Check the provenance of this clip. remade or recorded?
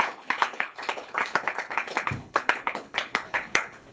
remade